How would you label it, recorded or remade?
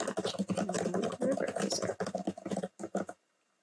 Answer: recorded